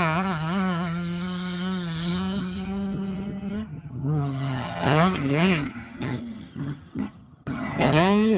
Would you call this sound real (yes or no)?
no